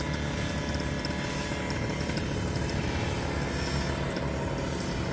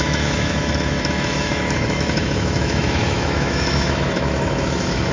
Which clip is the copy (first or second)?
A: second